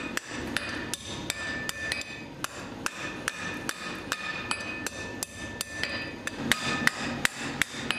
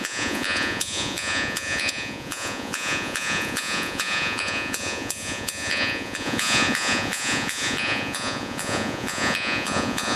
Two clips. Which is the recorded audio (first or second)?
first